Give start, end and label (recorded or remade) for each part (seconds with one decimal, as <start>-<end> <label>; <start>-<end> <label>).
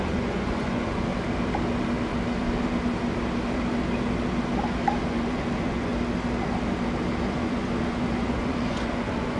0.0-1.1 remade; 1.1-5.1 recorded; 5.1-5.9 remade; 5.9-7.2 recorded; 7.2-9.4 remade